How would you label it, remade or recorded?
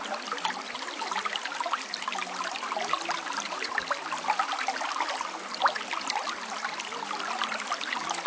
recorded